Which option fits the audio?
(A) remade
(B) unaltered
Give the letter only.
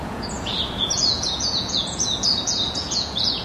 A